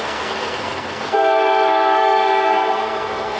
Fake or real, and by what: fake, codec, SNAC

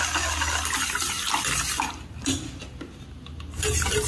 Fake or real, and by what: real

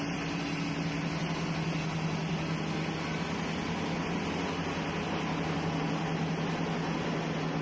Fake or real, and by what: real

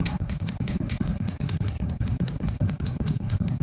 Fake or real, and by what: fake, codec, SNAC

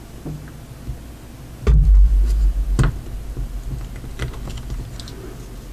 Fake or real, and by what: real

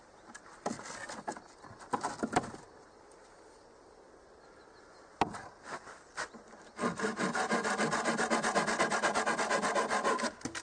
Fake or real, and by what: real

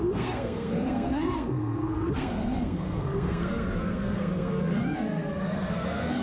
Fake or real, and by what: fake, codec, SNAC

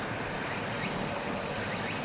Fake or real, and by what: real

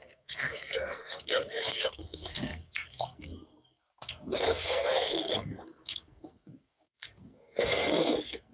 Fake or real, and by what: fake, codec, SNAC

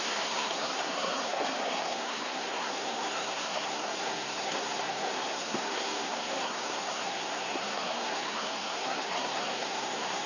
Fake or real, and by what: fake, codec, SNAC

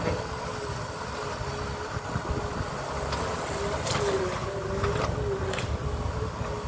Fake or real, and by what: real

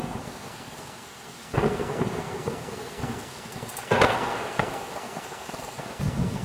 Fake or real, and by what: fake, codec, SNAC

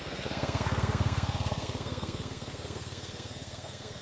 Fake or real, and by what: fake, codec, SNAC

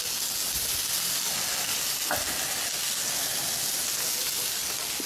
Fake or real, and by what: real